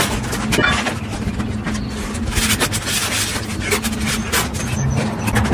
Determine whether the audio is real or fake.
real